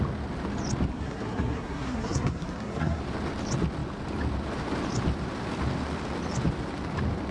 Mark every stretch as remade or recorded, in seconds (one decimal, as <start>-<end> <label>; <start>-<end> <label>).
0.0-0.9 recorded; 0.9-3.0 remade; 3.0-7.3 recorded